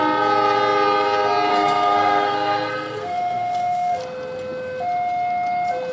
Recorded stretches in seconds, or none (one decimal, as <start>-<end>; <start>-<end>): 0.0-1.5; 4.0-5.9

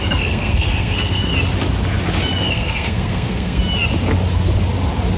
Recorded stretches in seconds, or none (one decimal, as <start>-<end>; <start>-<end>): 1.3-2.4; 3.6-5.2

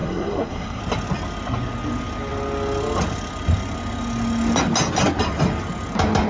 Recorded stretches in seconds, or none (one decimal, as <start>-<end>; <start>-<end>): 0.8-6.3

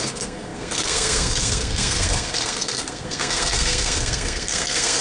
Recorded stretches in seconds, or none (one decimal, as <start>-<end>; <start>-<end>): none

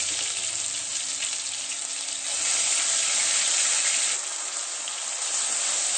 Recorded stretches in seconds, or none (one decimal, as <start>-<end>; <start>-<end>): 0.0-6.0

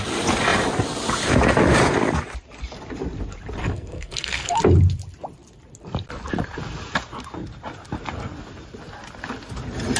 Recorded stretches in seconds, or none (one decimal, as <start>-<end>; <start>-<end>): 0.0-3.6; 4.6-10.0